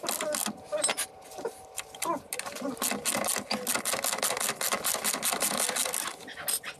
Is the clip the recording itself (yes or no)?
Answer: yes